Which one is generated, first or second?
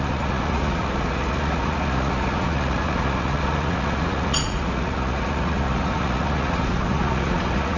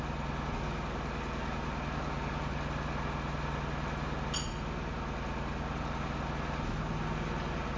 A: first